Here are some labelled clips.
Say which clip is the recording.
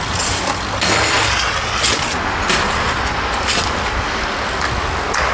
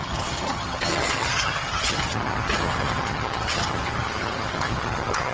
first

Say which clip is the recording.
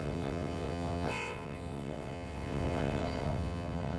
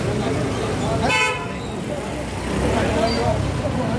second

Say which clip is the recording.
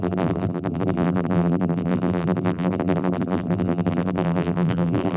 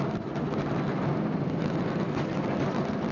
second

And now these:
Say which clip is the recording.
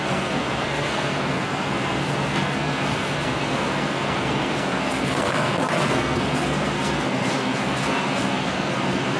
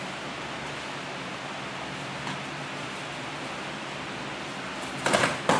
second